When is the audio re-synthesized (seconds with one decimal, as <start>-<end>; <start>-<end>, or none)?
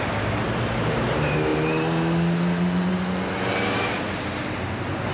none